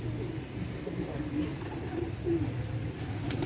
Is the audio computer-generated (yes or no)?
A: no